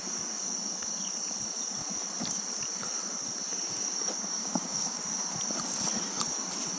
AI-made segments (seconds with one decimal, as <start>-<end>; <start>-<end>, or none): 4.4-5.0